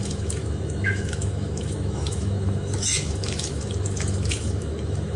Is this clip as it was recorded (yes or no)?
no